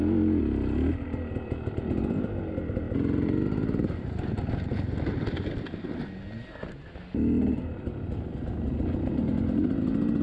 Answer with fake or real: real